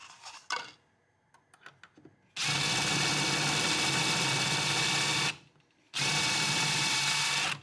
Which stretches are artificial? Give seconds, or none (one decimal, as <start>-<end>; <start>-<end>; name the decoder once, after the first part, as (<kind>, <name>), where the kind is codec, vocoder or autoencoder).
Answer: none